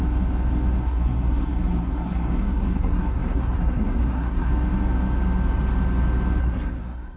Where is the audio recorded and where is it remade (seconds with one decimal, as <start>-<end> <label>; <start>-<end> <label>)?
0.0-0.8 recorded; 0.8-4.5 remade; 4.5-6.4 recorded; 6.4-7.2 remade